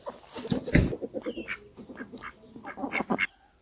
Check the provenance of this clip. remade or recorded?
remade